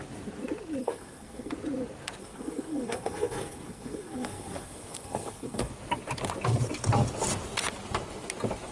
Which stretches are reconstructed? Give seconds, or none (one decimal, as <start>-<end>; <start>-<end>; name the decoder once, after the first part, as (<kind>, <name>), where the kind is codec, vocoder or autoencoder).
0.8-1.5 (codec, SNAC); 2.2-5.7